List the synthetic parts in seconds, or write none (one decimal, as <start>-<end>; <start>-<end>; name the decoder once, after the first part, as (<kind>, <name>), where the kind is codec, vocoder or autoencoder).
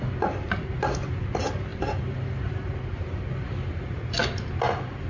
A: none